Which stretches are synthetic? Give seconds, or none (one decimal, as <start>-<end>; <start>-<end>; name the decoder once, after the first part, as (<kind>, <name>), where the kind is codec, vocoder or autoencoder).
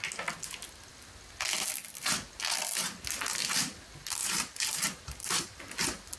4.2-5.6 (vocoder, BigVGAN v2)